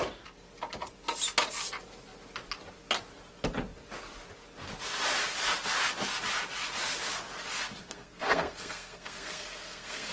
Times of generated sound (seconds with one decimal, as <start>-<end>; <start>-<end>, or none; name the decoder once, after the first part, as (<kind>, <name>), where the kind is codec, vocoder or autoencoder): 7.8-10.1 (codec, SNAC)